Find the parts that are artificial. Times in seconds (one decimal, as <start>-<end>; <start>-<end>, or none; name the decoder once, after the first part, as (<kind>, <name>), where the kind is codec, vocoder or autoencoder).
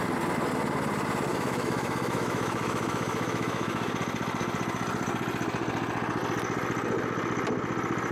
1.3-3.9 (autoencoder, DAC-VAE)